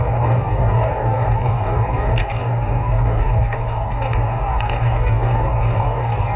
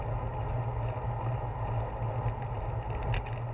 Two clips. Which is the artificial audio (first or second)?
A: first